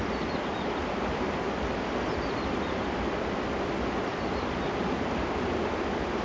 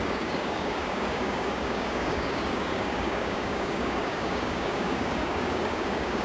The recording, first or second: first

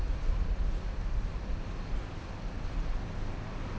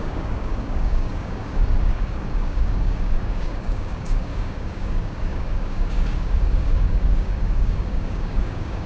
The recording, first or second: first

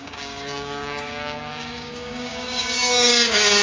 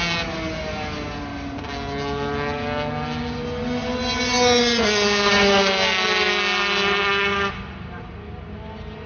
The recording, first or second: second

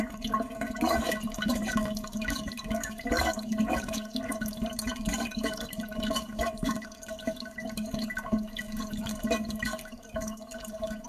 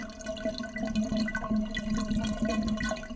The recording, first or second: second